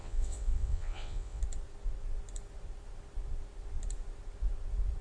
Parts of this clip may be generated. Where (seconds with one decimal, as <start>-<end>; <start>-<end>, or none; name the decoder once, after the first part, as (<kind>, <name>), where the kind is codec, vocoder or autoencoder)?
0.0-1.4 (vocoder, WaveNeXt)